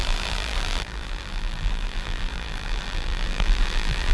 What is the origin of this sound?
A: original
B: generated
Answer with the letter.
B